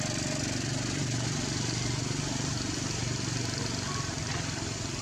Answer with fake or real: real